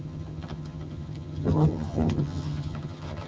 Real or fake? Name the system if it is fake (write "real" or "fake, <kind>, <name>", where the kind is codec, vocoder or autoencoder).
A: fake, vocoder, HiFi-GAN